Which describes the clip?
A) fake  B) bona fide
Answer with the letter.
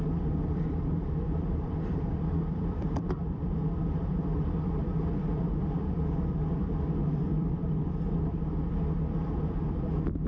A